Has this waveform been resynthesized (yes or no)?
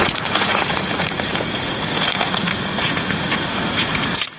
yes